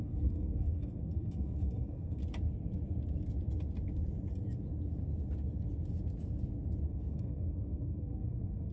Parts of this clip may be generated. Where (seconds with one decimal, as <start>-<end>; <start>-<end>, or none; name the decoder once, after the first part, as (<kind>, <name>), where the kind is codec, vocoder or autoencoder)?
0.0-2.2 (codec, SNAC); 6.9-8.7